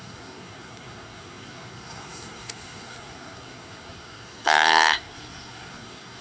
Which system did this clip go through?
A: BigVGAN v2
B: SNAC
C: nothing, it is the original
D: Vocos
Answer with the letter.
B